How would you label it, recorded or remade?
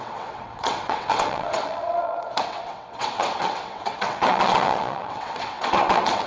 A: remade